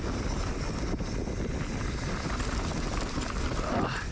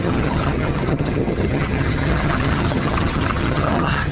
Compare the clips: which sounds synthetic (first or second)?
second